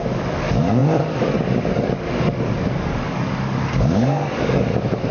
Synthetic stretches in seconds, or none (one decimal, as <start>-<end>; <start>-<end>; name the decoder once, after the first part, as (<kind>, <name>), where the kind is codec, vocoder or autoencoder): 0.0-5.1 (codec, DAC)